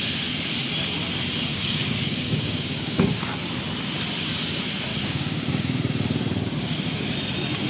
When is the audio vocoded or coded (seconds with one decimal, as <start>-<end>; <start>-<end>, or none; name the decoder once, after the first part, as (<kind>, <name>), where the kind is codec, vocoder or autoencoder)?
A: 1.5-3.3 (codec, DAC); 4.9-5.5

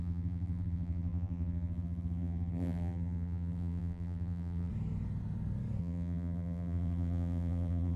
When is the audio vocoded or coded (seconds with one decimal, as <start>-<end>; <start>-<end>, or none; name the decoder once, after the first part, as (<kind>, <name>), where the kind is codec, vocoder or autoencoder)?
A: 0.0-4.7 (vocoder, BigVGAN v2); 5.8-8.0

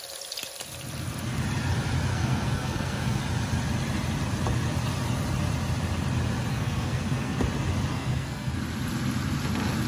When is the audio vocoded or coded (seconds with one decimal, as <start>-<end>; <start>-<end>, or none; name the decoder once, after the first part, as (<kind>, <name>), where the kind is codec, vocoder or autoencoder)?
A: 2.1-3.2 (codec, SNAC); 6.5-7.4; 7.9-8.6